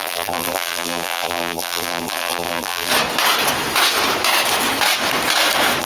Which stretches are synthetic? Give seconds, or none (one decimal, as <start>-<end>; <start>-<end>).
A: 0.0-2.9